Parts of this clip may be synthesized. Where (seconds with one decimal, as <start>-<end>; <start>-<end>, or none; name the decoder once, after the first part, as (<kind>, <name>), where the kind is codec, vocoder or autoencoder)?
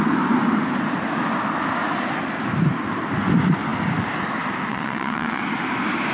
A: 4.7-5.4 (vocoder, WaveNeXt)